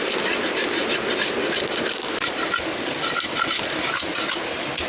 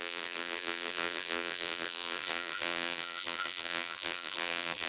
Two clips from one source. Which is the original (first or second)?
first